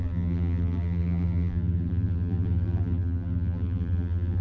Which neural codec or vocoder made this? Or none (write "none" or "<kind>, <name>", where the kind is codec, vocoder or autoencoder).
vocoder, BigVGAN v2